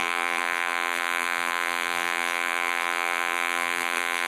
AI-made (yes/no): yes